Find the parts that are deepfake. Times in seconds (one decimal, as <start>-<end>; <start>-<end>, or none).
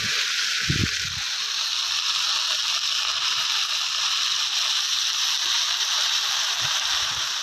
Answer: 0.0-0.8; 3.0-7.4